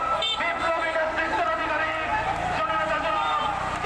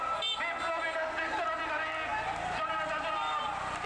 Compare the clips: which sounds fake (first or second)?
first